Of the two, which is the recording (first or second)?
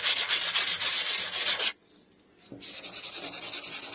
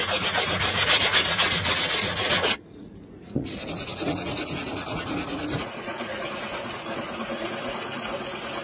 first